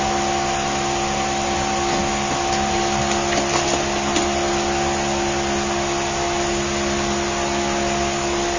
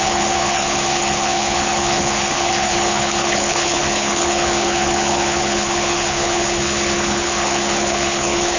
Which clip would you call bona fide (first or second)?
first